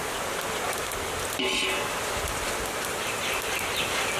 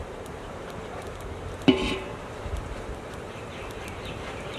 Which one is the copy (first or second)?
second